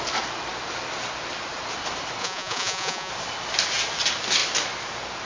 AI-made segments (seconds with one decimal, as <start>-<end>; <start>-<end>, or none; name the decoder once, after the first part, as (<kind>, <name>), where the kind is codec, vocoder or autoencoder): 2.2-3.1 (vocoder, Vocos)